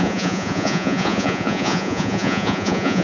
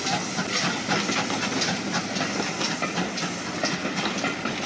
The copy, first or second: first